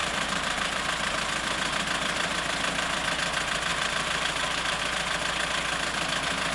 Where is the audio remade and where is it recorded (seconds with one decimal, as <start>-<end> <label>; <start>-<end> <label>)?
0.0-0.8 remade; 0.8-3.7 recorded; 3.7-4.8 remade; 4.8-6.5 recorded